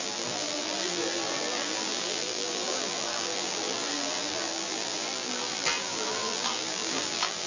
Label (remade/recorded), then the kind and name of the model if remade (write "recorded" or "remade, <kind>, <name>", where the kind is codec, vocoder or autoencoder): remade, vocoder, BigVGAN v2